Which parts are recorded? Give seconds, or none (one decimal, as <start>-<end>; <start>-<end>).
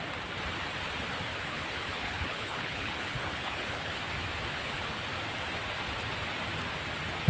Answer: 0.0-1.3; 4.0-4.5; 5.0-7.3